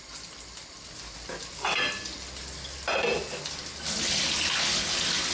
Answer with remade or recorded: recorded